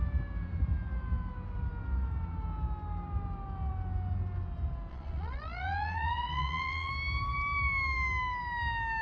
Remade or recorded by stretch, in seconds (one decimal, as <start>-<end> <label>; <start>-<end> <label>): 0.0-4.9 recorded; 4.9-6.9 remade; 6.9-9.0 recorded